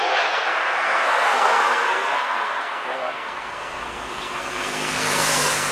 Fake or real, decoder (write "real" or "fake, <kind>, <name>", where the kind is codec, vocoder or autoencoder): fake, codec, SNAC